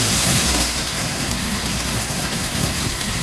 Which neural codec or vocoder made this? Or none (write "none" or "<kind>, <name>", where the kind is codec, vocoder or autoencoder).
codec, SNAC